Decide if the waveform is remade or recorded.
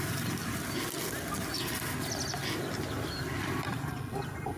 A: recorded